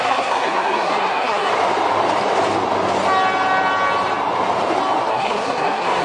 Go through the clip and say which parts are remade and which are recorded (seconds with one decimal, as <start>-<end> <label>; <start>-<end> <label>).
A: 0.0-1.5 remade; 1.5-5.1 recorded; 5.1-6.0 remade